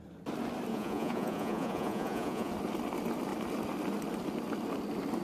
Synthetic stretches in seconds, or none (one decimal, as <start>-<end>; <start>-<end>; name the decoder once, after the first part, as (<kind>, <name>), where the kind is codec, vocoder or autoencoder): 0.7-2.5 (vocoder, Vocos)